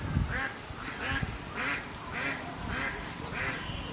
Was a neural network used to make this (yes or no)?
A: no